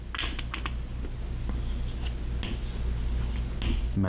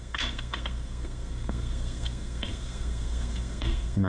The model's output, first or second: second